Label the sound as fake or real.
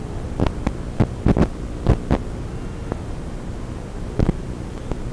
real